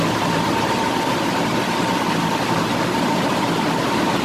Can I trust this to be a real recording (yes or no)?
no